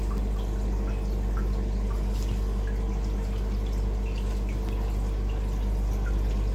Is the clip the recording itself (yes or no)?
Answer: yes